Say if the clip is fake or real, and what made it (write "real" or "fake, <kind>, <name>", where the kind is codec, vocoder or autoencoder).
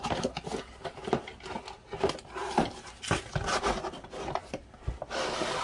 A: real